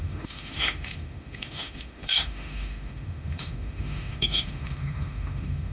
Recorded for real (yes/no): no